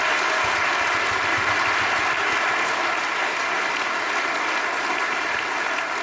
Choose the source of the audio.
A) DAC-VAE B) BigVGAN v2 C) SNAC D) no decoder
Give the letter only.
D